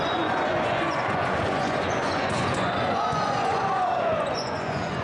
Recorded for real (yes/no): no